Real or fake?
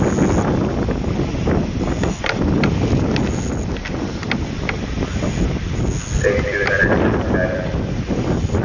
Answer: real